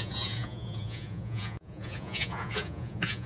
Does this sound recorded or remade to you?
remade